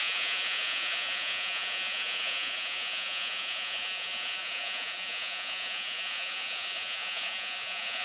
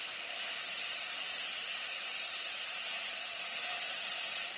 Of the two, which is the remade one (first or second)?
first